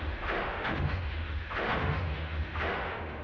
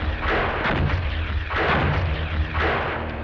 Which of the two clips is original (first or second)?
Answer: second